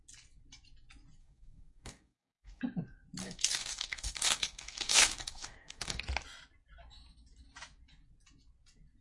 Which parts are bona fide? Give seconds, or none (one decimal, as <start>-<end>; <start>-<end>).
0.0-1.2; 2.6-3.2; 6.0-9.0